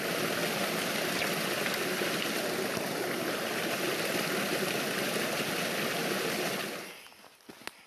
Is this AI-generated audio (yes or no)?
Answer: no